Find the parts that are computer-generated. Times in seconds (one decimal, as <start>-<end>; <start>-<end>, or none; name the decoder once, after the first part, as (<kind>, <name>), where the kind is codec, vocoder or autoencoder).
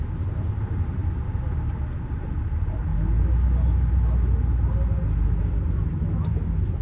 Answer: 0.0-2.9 (vocoder, BigVGAN v2); 5.4-6.8